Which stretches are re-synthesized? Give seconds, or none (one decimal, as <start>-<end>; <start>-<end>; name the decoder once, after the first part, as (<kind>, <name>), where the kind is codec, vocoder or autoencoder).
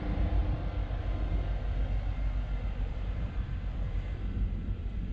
0.0-0.4 (vocoder, BigVGAN v2); 2.8-5.1